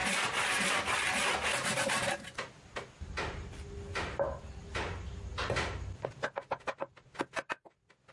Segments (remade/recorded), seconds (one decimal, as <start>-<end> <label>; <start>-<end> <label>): 0.0-8.1 recorded